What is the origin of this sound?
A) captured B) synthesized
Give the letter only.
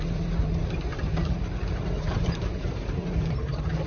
B